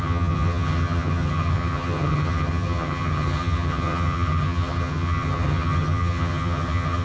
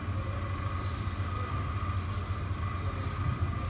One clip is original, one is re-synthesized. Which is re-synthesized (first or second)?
first